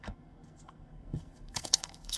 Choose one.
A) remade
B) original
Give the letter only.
A